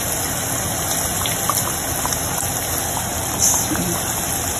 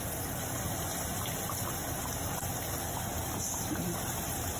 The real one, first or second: first